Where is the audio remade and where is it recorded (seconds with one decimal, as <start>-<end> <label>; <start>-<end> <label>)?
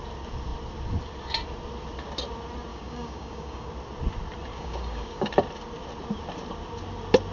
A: 0.0-2.7 recorded; 2.7-3.7 remade; 3.7-4.5 recorded; 4.5-5.3 remade; 5.3-7.3 recorded